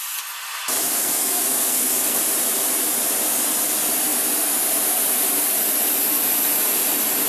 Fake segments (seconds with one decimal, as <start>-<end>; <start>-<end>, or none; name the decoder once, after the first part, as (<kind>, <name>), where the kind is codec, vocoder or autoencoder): 0.9-2.2 (codec, SNAC)